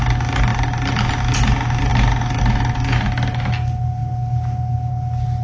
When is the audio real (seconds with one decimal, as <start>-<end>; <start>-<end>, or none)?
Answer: 0.0-5.4